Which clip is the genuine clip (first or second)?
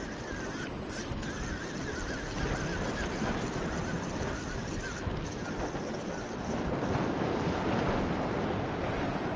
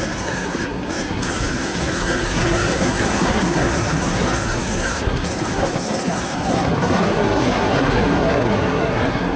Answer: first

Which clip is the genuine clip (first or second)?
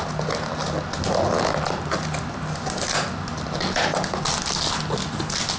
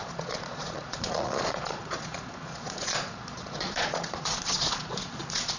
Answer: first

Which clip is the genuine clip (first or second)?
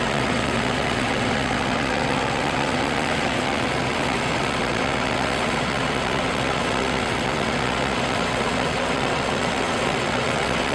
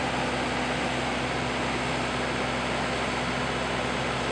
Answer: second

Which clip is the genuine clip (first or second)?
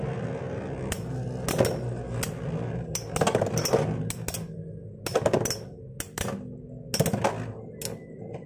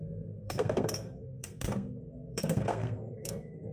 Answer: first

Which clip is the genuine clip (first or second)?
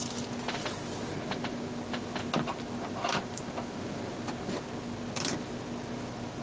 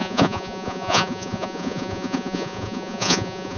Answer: first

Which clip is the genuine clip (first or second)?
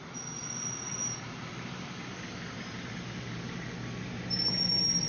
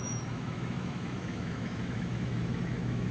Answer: first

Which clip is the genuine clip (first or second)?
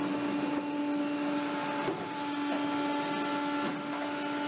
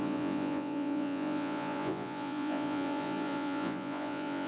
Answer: first